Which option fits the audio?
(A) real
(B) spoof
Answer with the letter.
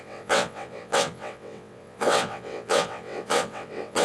B